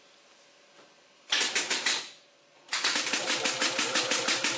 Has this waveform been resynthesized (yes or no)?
no